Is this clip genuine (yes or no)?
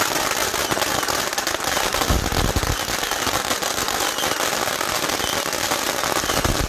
yes